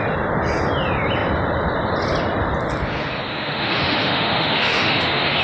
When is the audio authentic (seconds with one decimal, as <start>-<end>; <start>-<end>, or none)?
0.0-3.3